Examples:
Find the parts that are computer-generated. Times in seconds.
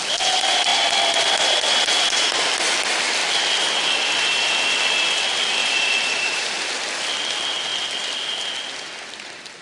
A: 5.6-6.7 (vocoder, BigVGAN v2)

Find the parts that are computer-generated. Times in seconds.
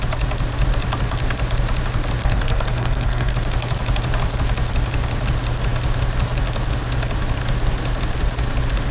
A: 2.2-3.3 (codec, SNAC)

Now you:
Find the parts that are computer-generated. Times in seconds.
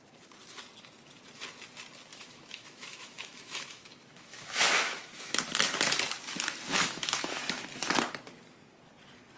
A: 2.1-5.4 (autoencoder, DAC-VAE); 6.7-7.4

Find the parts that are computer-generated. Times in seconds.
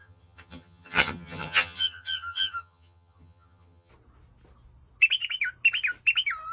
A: 0.0-3.9 (vocoder, HiFi-GAN)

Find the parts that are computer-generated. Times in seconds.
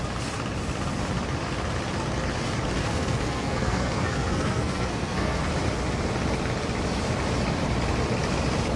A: 2.8-5.4 (codec, SNAC)